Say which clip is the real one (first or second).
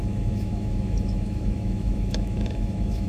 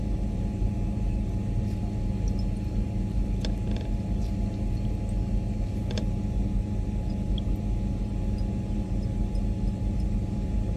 second